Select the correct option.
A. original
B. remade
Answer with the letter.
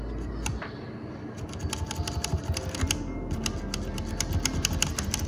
A